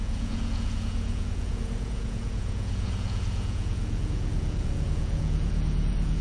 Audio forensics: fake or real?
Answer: fake